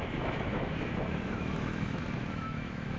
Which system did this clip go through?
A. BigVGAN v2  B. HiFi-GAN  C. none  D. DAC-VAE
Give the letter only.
D